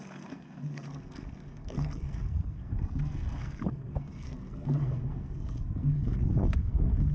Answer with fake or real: fake